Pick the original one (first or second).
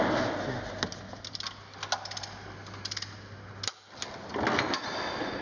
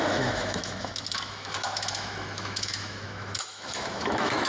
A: first